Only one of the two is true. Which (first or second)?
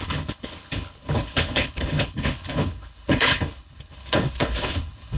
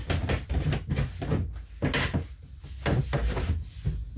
second